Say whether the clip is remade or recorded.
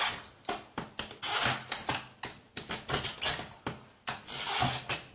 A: recorded